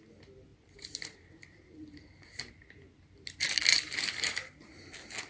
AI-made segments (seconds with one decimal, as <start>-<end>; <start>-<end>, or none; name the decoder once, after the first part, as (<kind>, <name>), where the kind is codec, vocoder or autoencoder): 0.5-2.5 (vocoder, BigVGAN v2); 3.7-4.8